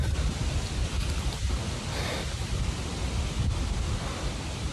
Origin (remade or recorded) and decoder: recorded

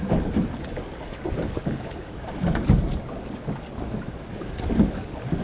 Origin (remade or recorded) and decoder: remade, codec, DAC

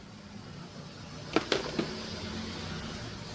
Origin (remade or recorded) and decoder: recorded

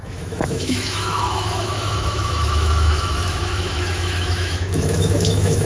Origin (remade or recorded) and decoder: remade, autoencoder, DAC-VAE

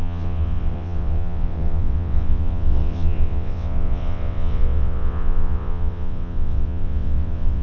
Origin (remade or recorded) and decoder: remade, vocoder, WaveNeXt